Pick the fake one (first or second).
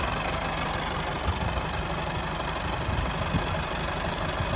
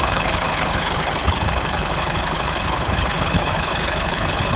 second